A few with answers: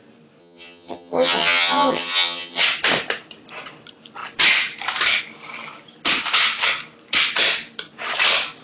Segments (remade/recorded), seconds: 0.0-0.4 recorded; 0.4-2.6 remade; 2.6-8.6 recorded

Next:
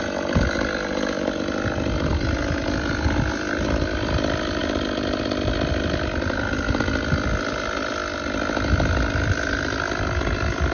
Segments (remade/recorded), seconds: 0.0-10.7 recorded

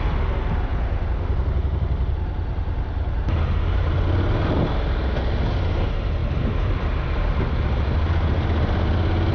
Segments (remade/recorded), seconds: 0.0-9.3 recorded

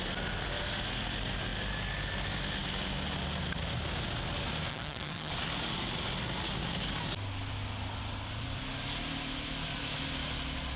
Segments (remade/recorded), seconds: 0.0-4.7 recorded; 4.7-5.3 remade; 5.3-10.8 recorded

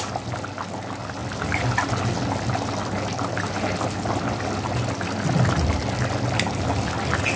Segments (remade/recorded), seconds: 0.0-7.4 recorded

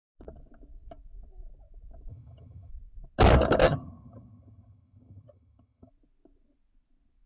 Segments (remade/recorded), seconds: 0.0-2.1 recorded; 2.1-2.7 remade; 2.7-3.6 recorded; 3.6-5.9 remade; 5.9-7.3 recorded

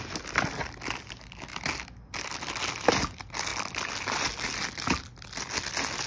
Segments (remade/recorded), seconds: 0.0-6.1 recorded

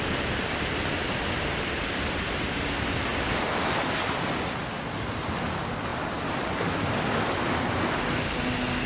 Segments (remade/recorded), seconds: 0.0-8.9 recorded